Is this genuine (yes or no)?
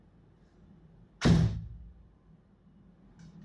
yes